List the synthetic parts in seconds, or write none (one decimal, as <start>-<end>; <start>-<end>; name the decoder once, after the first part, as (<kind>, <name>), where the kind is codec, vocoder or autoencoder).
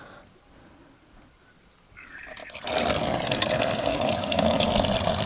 3.9-4.7 (codec, DAC)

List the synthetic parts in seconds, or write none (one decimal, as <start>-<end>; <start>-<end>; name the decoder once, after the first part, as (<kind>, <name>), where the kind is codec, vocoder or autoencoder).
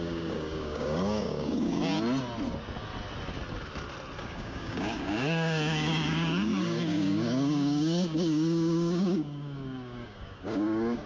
0.0-1.8 (codec, DAC); 4.2-11.1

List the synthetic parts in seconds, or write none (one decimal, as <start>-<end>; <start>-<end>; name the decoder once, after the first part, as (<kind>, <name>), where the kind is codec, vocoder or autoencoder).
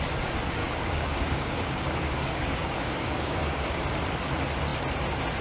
0.6-3.8 (codec, DAC)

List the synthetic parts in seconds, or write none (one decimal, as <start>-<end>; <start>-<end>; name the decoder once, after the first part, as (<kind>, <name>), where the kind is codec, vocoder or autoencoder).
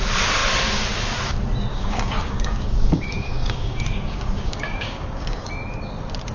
1.7-5.5 (codec, DAC)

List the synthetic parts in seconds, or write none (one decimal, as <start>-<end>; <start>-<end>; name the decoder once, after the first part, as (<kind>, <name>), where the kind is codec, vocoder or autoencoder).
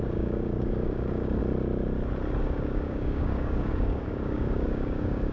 0.0-1.4 (codec, DAC); 2.4-5.3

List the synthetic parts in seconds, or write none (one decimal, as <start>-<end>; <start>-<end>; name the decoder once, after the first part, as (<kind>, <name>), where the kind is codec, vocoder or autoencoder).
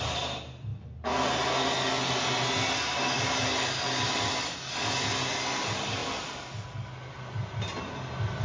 none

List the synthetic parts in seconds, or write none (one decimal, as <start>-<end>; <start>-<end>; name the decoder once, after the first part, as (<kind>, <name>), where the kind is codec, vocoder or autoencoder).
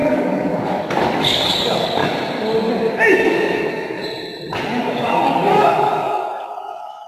0.0-2.0 (codec, DAC); 2.9-4.0; 4.8-7.1